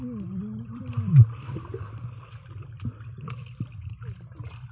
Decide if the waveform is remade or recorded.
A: recorded